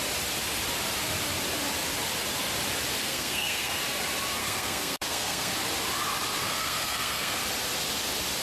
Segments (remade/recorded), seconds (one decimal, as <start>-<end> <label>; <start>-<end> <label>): 0.0-3.0 recorded; 3.0-3.7 remade; 3.7-4.4 recorded; 4.4-5.5 remade; 5.5-6.4 recorded; 6.4-7.4 remade; 7.4-8.4 recorded